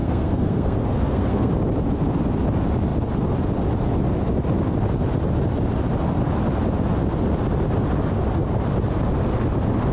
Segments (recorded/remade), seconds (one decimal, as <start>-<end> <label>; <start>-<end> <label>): 0.0-1.5 remade; 1.5-9.9 recorded